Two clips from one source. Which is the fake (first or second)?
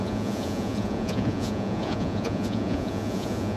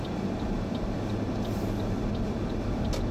first